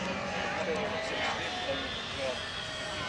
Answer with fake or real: real